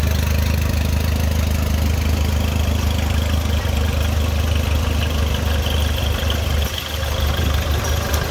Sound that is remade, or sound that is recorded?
recorded